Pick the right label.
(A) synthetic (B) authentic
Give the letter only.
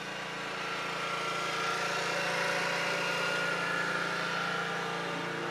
B